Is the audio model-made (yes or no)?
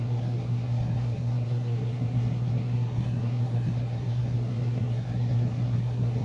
yes